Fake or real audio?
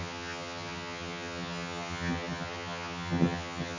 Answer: fake